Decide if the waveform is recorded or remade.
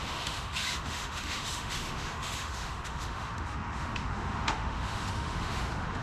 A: remade